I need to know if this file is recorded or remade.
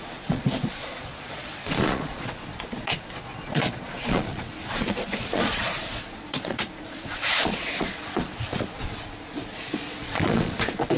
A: remade